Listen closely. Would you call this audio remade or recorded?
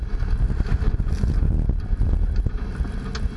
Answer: recorded